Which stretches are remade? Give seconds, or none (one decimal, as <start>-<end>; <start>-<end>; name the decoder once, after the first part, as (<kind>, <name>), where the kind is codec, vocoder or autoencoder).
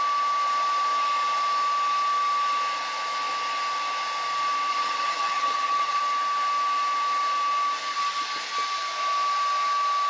4.7-6.0 (vocoder, HiFi-GAN)